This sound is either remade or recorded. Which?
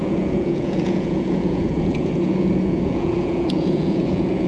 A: remade